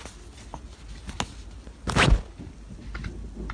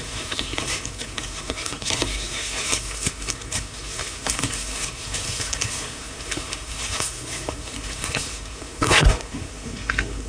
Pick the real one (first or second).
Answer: first